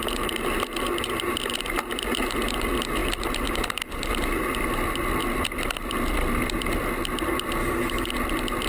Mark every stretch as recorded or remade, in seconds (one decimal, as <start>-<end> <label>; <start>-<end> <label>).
0.0-7.6 recorded; 7.6-8.1 remade; 8.1-8.7 recorded

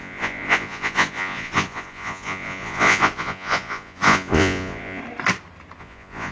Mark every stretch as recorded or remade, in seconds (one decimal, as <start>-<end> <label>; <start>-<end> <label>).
0.0-5.0 remade; 5.0-5.8 recorded; 5.8-6.3 remade

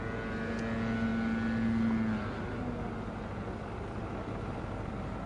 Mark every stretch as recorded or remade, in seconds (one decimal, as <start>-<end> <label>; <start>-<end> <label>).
0.0-5.3 recorded

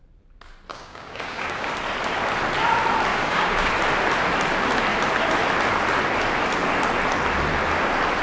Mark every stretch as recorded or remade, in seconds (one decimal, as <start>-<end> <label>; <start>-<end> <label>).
0.0-0.7 recorded; 0.7-1.7 remade; 1.7-3.1 recorded; 3.1-3.7 remade; 3.7-8.2 recorded

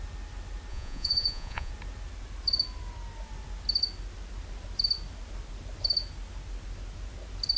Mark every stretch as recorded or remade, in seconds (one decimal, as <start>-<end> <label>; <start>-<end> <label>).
0.0-0.7 recorded; 0.7-1.7 remade; 1.7-7.6 recorded

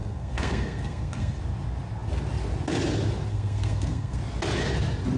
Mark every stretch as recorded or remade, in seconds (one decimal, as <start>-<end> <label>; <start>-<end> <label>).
0.0-1.4 remade; 1.4-3.3 recorded; 3.3-4.2 remade; 4.2-5.2 recorded